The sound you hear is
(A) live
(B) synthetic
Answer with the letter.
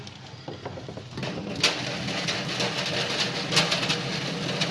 A